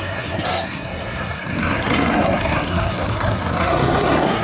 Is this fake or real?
fake